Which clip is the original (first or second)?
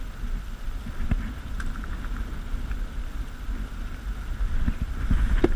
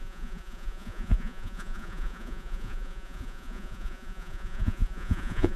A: first